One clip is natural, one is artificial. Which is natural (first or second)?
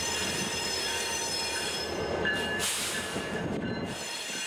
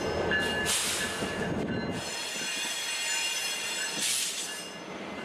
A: second